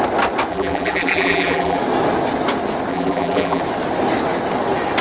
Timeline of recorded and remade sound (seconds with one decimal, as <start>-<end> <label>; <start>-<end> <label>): 0.0-0.5 recorded; 0.5-1.8 remade; 1.8-2.9 recorded; 2.9-3.6 remade; 3.6-5.0 recorded